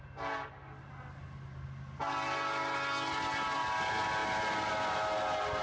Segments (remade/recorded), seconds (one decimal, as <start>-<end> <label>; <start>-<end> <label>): 0.0-5.6 recorded